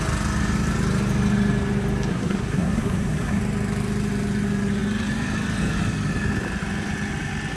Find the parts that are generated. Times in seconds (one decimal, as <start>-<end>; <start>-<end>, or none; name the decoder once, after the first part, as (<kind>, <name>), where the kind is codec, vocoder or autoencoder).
2.1-3.4 (codec, SNAC)